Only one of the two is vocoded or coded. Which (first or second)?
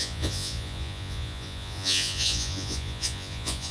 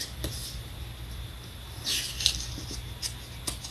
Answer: first